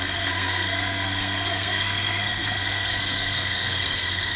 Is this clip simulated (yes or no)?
yes